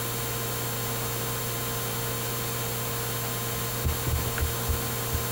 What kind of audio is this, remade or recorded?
recorded